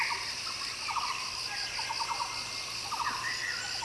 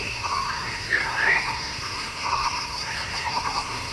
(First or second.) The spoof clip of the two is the second